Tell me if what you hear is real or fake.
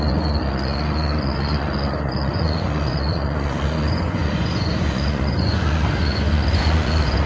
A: fake